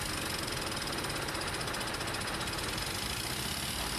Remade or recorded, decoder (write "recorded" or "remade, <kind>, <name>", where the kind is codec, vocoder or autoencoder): recorded